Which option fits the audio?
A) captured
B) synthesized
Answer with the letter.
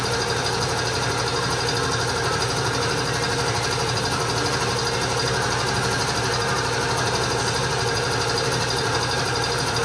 A